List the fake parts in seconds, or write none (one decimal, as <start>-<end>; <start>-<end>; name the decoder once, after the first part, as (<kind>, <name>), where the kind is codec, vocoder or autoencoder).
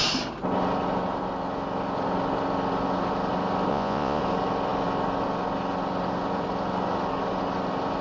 3.7-4.2 (vocoder, Vocos)